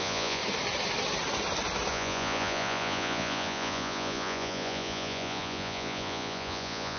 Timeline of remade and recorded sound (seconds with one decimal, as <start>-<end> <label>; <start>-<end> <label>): 0.0-0.4 remade; 0.4-1.9 recorded; 1.9-7.0 remade